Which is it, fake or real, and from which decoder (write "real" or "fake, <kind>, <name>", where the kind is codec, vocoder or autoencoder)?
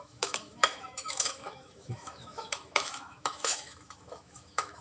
fake, autoencoder, DAC-VAE